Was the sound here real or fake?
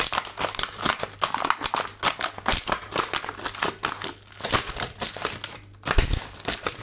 real